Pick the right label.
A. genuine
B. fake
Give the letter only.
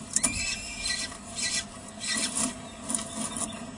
A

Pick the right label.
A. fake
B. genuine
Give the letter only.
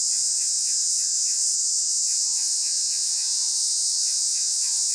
A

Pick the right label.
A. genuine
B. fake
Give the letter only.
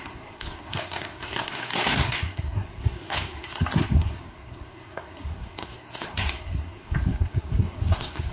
B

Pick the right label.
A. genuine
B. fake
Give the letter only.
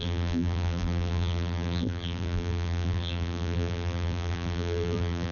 B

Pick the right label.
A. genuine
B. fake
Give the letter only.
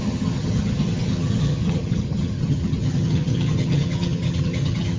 B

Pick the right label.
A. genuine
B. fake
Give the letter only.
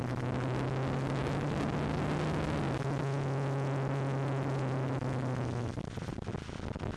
A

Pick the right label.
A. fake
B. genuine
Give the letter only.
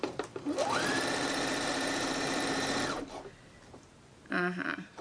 A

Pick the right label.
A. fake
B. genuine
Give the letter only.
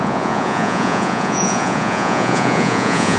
A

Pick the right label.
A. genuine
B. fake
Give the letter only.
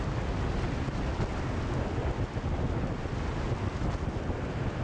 A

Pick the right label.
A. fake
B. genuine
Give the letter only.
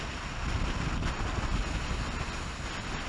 B